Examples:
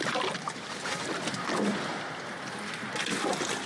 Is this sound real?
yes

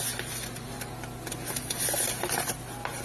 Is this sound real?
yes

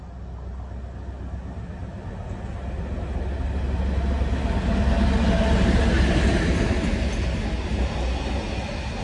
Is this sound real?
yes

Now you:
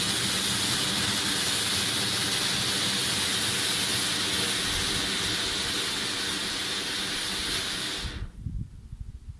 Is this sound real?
yes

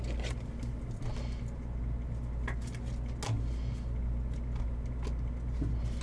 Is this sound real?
yes